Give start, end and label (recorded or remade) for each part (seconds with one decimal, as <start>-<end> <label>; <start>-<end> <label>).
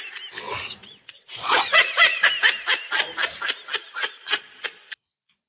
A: 0.0-0.8 recorded; 0.8-2.3 remade; 2.3-3.8 recorded; 3.8-4.4 remade; 4.4-5.5 recorded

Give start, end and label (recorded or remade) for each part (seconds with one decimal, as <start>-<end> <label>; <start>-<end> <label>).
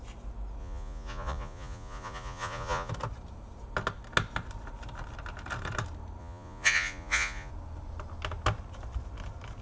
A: 0.0-0.6 recorded; 0.6-2.9 remade; 2.9-6.2 recorded; 6.2-7.5 remade; 7.5-9.6 recorded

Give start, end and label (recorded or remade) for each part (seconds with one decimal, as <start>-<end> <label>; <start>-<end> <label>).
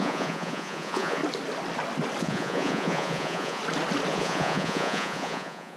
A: 0.0-1.2 remade; 1.2-2.2 recorded; 2.2-3.6 remade; 3.6-4.1 recorded; 4.1-5.8 remade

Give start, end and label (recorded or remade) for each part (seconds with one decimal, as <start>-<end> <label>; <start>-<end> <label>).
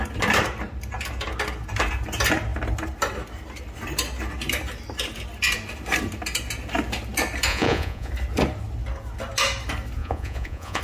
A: 0.0-7.5 recorded; 7.5-8.1 remade; 8.1-10.0 recorded; 10.0-10.8 remade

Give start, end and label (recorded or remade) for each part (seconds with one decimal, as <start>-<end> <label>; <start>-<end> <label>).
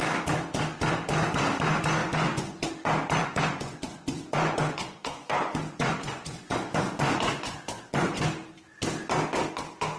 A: 0.0-2.0 recorded; 2.0-2.7 remade; 2.7-3.2 recorded; 3.2-8.2 remade; 8.2-10.0 recorded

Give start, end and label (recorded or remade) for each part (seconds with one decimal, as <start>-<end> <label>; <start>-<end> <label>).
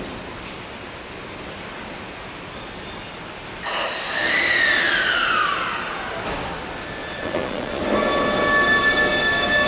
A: 0.0-7.0 recorded; 7.0-7.8 remade; 7.8-9.7 recorded